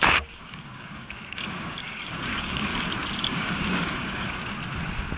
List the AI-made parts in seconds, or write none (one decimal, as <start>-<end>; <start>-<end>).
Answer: 0.0-2.7; 3.3-4.5